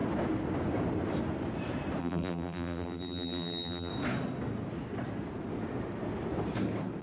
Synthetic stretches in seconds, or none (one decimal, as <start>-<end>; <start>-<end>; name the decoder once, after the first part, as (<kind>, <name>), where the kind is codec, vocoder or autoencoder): 2.0-3.9 (vocoder, BigVGAN v2)